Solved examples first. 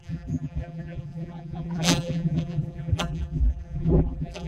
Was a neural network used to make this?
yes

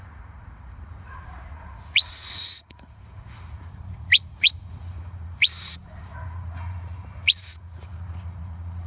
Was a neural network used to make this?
yes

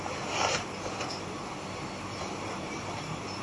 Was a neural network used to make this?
no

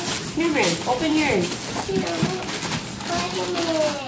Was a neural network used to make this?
no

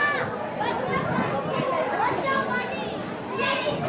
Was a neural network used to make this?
no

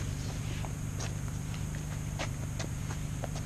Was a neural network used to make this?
no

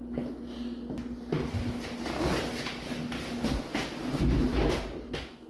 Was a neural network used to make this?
no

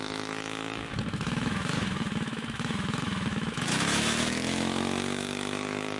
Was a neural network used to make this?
yes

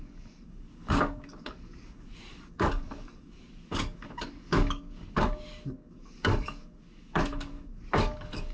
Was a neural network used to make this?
yes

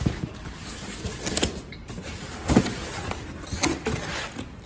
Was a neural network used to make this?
no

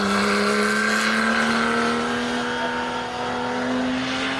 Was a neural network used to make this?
no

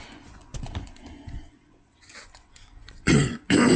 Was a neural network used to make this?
yes